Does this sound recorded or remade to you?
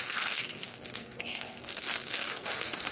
remade